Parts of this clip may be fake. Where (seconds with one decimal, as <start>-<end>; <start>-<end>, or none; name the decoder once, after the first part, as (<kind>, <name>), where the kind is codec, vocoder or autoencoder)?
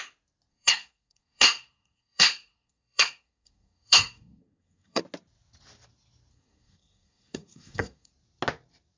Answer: 0.5-5.0 (codec, SNAC); 6.3-8.1